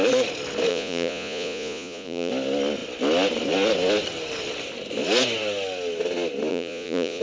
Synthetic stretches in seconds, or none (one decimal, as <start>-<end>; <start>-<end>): 0.7-2.3; 6.5-7.2